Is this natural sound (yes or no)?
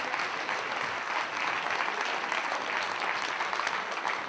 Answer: yes